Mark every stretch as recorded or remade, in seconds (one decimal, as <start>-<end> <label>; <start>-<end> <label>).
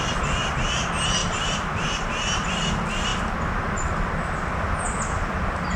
0.0-1.2 recorded; 1.2-2.5 remade; 2.5-5.8 recorded